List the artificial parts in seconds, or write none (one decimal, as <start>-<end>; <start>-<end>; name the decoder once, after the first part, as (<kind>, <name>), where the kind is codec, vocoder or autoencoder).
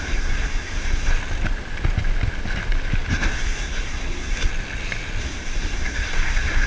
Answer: 0.0-1.1 (codec, SNAC); 3.1-4.5; 5.2-6.7